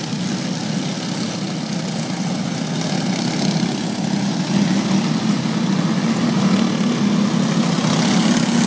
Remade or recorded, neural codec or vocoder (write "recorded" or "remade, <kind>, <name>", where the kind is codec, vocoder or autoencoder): recorded